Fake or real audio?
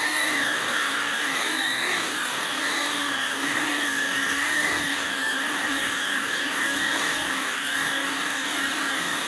fake